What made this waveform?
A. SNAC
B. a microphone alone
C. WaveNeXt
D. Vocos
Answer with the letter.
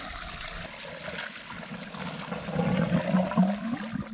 B